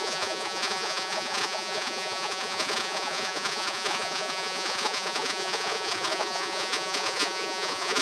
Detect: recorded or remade remade